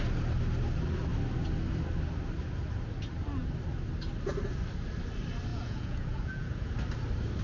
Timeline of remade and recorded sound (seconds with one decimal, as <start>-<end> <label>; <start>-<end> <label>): 0.0-5.5 recorded; 5.5-6.7 remade; 6.7-7.4 recorded